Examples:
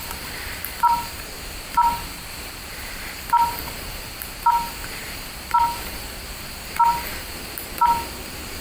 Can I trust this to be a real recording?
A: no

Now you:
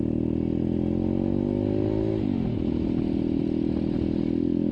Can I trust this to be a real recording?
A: yes